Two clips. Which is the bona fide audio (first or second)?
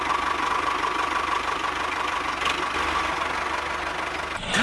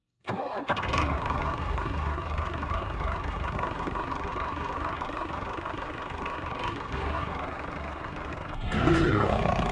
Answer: first